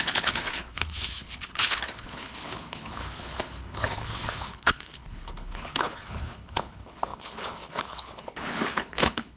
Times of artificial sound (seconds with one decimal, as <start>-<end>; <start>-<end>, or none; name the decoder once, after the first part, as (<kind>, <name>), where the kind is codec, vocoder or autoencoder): 0.0-9.4 (codec, HILCodec)